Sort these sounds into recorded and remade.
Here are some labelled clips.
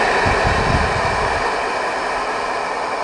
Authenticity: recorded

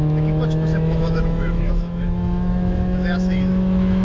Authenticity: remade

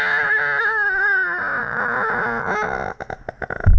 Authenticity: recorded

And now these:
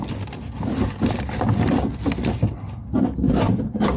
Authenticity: recorded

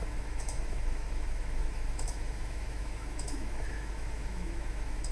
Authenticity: remade